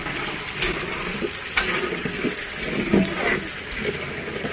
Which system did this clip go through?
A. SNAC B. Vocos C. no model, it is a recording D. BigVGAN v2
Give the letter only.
C